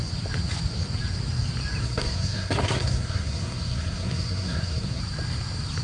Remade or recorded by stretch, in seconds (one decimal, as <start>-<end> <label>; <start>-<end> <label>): 0.0-1.8 recorded; 1.8-5.0 remade; 5.0-5.8 recorded